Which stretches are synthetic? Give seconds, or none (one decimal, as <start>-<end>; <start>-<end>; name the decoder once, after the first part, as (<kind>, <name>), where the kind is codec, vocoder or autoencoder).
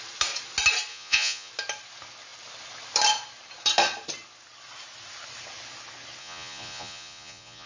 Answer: 0.9-1.5 (vocoder, Vocos); 6.2-7.7